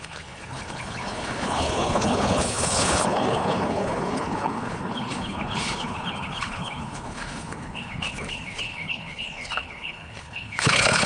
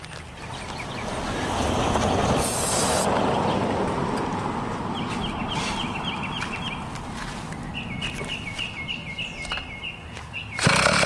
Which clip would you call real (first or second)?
second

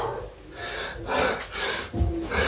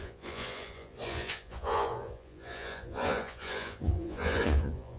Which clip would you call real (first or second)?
first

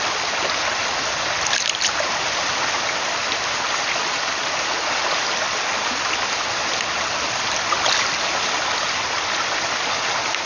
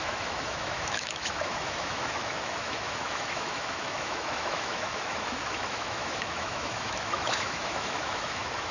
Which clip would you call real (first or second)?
first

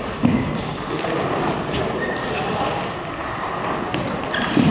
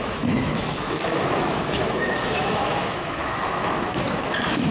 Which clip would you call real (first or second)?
first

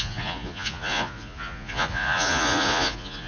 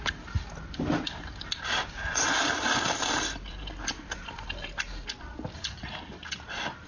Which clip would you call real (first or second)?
second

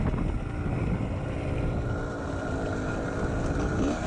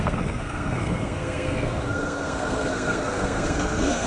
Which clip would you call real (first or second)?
first